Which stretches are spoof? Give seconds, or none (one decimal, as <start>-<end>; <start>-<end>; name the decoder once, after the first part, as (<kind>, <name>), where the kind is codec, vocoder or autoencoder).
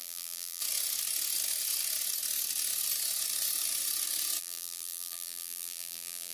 0.0-0.6 (vocoder, BigVGAN v2); 4.4-6.3